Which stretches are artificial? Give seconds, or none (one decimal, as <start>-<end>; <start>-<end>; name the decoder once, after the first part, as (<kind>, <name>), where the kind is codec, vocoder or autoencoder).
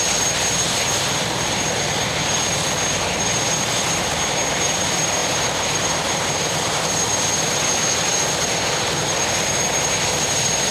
5.2-6.9 (vocoder, BigVGAN v2)